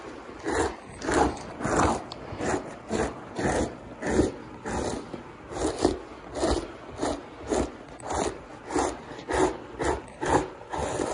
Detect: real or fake real